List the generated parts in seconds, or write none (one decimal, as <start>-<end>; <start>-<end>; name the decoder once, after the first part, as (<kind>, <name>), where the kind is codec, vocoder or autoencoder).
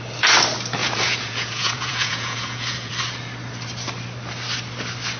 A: 0.8-2.9 (vocoder, Vocos)